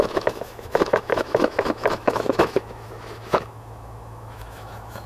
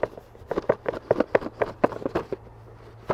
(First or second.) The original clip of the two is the second